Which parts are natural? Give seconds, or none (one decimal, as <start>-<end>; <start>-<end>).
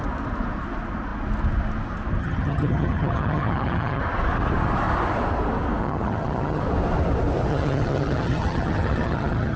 0.0-2.2; 4.0-5.8; 6.6-7.5